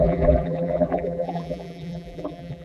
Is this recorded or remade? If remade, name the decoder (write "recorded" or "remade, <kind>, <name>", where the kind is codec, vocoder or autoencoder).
remade, vocoder, BigVGAN v2